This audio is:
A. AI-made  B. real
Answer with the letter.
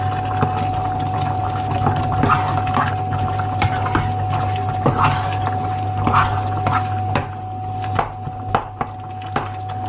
B